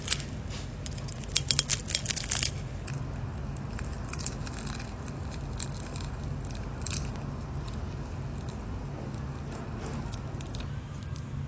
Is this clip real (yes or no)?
yes